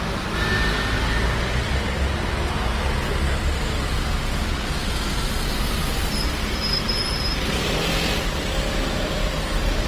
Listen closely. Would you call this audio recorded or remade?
recorded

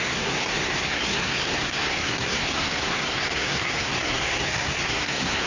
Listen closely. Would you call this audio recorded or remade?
remade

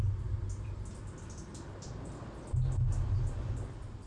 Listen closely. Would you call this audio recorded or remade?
recorded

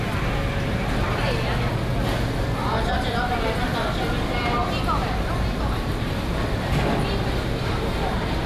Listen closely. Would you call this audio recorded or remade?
recorded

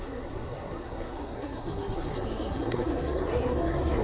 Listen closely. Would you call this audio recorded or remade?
remade